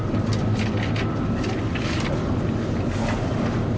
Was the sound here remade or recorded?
recorded